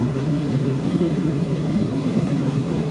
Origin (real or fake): fake